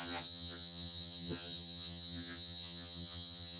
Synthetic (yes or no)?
yes